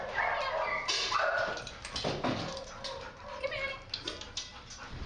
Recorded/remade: recorded